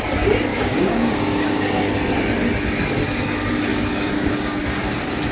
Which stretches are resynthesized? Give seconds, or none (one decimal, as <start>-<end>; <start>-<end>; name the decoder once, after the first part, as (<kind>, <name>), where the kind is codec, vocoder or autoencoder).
0.5-1.9 (codec, DAC); 3.7-4.6